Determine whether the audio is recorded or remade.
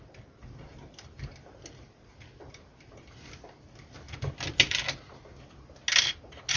recorded